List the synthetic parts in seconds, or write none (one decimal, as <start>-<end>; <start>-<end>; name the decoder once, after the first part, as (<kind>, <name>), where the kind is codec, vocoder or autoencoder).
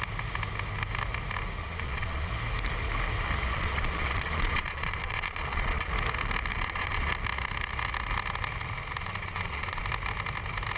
1.6-2.3 (vocoder, Vocos); 3.5-5.9; 6.5-7.1; 9.0-9.8